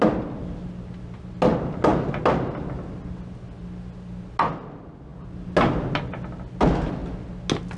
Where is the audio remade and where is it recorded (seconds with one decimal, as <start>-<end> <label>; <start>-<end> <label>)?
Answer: 0.0-7.8 recorded